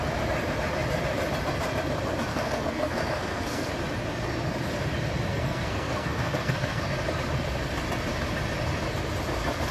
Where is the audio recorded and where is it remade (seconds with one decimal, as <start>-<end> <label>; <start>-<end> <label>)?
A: 0.0-2.3 recorded; 2.3-3.7 remade; 3.7-5.3 recorded; 5.3-6.8 remade; 6.8-9.7 recorded